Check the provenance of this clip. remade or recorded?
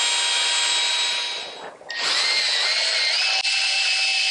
recorded